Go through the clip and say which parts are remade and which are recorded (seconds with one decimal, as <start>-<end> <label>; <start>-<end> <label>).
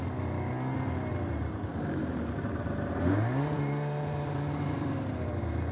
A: 0.0-1.7 recorded; 1.7-5.1 remade; 5.1-5.7 recorded